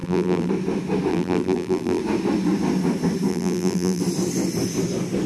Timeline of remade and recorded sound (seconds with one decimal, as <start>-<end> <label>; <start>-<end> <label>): 0.0-0.5 remade; 0.5-1.1 recorded; 1.1-2.0 remade; 2.0-3.3 recorded; 3.3-4.0 remade; 4.0-5.3 recorded